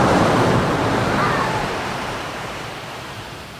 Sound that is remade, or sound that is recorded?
remade